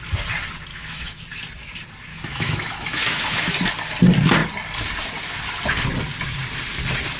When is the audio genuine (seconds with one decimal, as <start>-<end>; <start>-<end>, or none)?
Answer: 0.0-0.7; 1.2-2.1; 3.5-7.2